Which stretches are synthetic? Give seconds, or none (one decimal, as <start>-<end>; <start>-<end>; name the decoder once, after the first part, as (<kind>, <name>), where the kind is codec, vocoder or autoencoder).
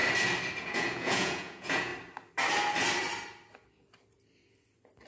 0.6-1.9 (vocoder, Vocos)